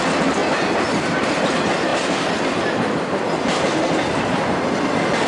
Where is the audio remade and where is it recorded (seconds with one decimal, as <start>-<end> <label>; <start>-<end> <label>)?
0.0-5.3 recorded